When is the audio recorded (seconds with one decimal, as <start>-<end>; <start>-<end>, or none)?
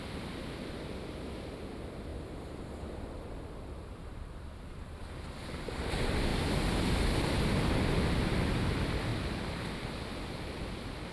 0.0-4.1; 5.0-11.1